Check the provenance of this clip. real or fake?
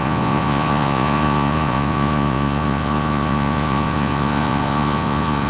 fake